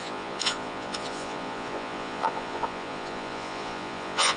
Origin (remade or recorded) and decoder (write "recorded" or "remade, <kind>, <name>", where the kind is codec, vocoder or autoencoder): remade, vocoder, Vocos